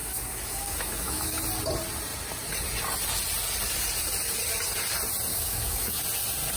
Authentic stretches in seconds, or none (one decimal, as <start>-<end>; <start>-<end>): 1.4-5.3; 6.0-6.6